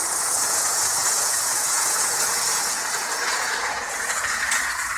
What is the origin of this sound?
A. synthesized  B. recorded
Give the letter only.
A